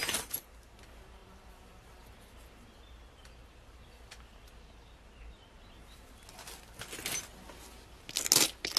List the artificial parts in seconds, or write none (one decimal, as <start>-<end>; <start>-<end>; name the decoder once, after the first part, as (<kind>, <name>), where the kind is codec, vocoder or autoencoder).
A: none